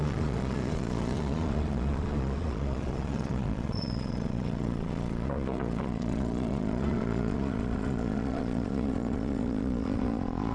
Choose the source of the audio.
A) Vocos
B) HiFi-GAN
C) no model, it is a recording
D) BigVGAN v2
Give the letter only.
A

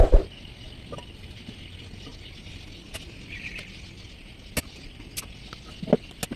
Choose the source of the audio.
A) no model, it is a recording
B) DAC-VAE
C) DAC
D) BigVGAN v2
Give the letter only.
A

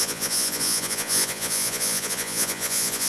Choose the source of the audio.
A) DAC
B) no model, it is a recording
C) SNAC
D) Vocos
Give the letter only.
D